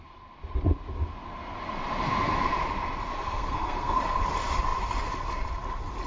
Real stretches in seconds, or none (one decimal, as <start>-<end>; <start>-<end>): 0.0-3.1; 4.0-6.1